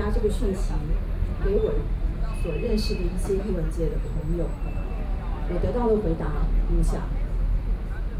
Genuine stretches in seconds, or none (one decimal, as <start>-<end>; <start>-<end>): 0.0-1.3; 3.5-8.2